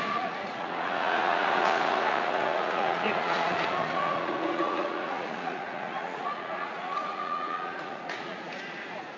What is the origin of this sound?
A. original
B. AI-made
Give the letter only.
B